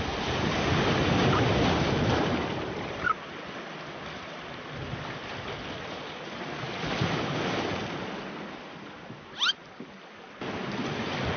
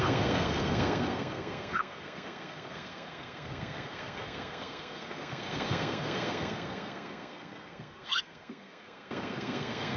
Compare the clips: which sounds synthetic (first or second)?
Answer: second